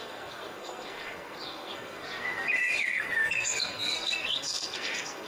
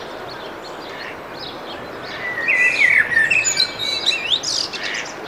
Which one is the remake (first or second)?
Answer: first